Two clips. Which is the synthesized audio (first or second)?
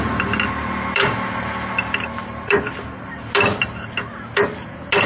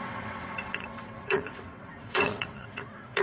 second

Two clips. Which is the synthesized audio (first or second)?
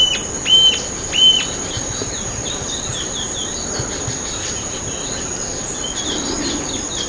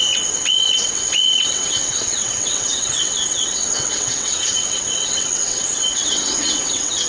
second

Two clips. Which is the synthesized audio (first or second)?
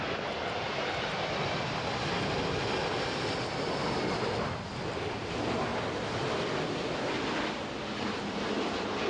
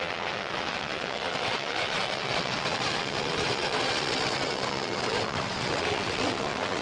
second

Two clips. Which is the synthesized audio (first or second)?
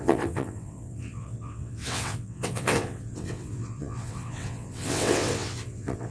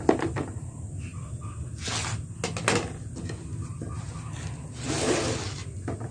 first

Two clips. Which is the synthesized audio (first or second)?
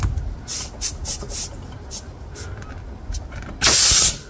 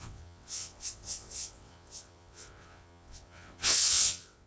second